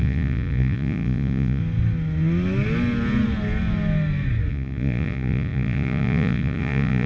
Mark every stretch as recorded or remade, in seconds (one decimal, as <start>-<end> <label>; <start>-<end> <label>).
0.0-1.6 remade; 1.6-4.5 recorded; 4.5-7.1 remade